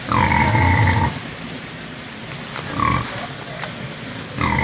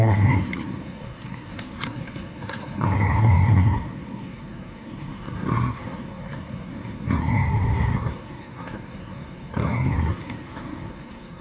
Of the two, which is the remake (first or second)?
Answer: second